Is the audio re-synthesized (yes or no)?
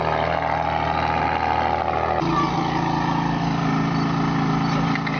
no